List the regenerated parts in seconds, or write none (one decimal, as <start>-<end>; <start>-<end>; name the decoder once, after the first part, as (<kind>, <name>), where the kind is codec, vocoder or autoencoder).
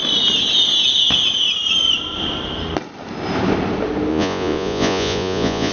4.1-5.7 (vocoder, Vocos)